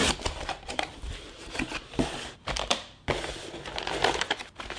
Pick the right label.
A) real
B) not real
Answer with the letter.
B